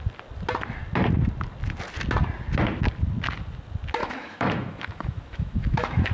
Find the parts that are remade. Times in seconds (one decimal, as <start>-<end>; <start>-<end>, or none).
4.0-6.1